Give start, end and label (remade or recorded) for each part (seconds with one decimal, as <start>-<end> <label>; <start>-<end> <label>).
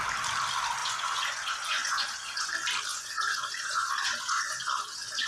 0.0-0.8 recorded; 0.8-2.5 remade; 2.5-2.9 recorded; 2.9-5.3 remade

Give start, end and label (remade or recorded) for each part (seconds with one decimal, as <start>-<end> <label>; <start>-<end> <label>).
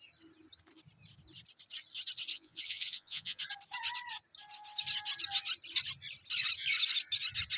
0.0-2.3 recorded; 2.3-3.4 remade; 3.4-7.6 recorded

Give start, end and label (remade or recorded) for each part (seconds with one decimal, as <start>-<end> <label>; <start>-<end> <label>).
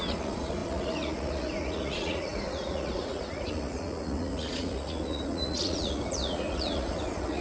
0.0-7.4 remade